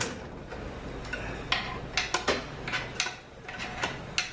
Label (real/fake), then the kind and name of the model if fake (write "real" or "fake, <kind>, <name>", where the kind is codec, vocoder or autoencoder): real